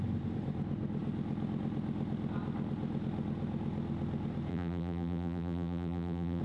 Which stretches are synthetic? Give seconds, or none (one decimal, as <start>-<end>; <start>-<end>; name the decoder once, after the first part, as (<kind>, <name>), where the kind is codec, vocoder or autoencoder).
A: 4.5-6.4 (vocoder, BigVGAN v2)